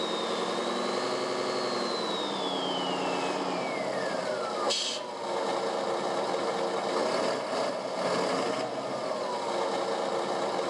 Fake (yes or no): no